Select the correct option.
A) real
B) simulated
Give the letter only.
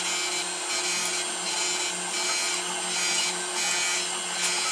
A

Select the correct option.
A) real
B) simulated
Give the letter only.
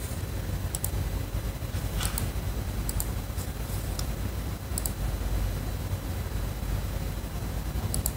A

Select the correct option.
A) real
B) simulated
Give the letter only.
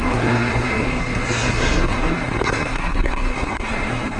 B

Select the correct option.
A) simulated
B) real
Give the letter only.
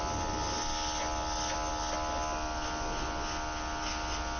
B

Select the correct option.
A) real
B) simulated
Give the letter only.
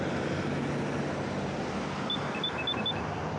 A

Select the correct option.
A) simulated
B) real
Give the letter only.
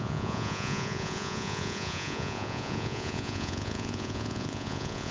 A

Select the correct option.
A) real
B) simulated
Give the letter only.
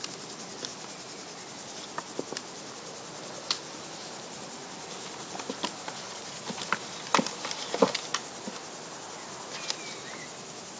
A